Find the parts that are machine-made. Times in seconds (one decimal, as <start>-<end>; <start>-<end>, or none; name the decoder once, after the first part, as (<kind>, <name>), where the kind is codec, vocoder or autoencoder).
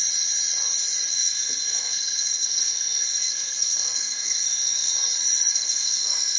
1.1-4.9 (codec, SNAC); 5.5-6.4